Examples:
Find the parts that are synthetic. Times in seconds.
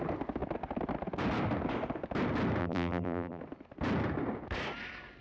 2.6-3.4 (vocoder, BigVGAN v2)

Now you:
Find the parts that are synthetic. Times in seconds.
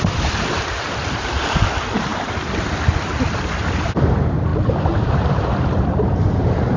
0.0-6.8 (vocoder, BigVGAN v2)